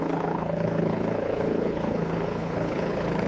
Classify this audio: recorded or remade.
remade